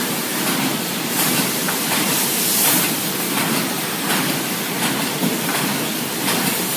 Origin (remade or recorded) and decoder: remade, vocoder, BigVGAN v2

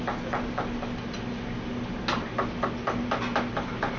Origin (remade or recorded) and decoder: recorded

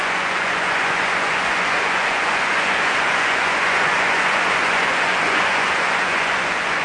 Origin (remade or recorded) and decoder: remade, vocoder, Vocos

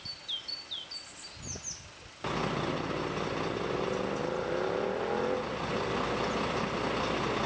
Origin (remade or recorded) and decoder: recorded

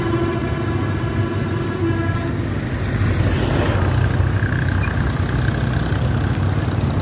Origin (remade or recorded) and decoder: recorded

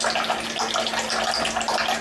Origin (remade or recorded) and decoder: recorded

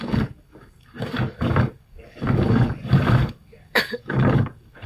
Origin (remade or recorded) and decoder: remade, codec, DAC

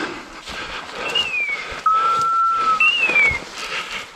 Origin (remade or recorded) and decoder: recorded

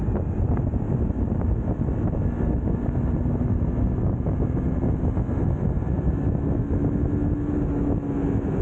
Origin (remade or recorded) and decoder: recorded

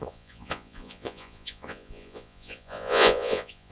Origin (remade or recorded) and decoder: remade, vocoder, Vocos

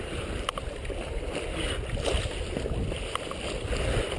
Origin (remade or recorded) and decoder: recorded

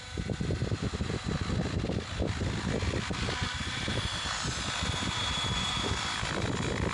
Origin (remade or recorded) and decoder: recorded